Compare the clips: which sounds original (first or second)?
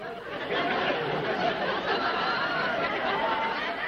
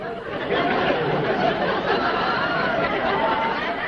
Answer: first